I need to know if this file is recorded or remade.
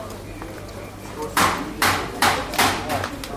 recorded